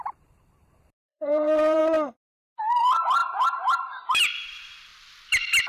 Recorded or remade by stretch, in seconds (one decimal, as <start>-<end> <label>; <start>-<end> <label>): 0.0-1.8 remade; 1.8-2.8 recorded; 2.8-4.9 remade; 4.9-5.7 recorded